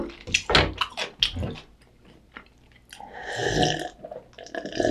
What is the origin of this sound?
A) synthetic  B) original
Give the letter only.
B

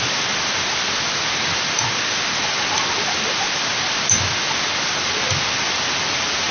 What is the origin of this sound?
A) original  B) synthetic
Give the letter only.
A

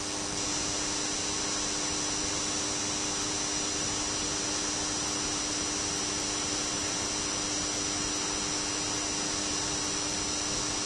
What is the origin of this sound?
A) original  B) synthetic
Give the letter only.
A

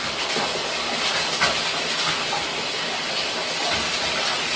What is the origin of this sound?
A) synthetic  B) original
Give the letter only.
B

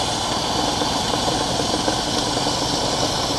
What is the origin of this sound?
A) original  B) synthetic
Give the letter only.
A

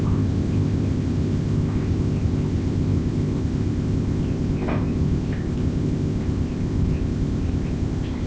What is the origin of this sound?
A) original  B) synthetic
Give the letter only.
B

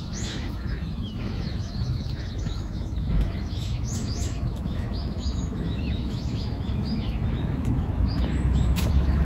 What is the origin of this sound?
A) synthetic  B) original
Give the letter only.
A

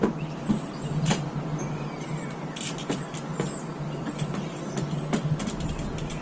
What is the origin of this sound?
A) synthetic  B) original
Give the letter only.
B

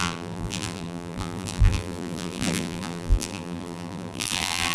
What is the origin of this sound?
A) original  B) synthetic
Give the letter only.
B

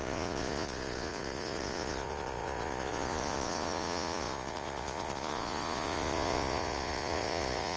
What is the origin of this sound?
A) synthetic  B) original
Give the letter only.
A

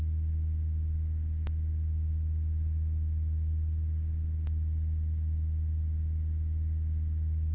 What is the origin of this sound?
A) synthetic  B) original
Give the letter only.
B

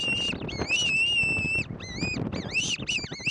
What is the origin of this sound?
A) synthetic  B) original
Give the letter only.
B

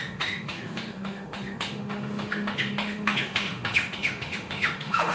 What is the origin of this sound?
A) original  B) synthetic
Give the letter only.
B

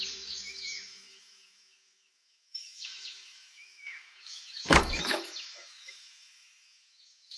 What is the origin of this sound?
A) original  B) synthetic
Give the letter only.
B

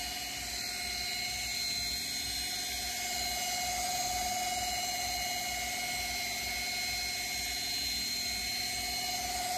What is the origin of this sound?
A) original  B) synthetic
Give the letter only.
A